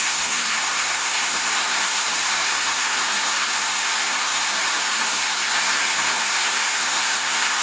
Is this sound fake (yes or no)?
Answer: yes